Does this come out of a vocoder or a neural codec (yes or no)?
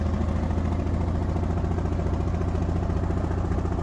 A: no